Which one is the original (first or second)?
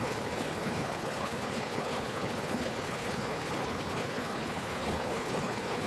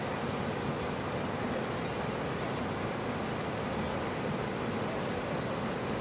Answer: second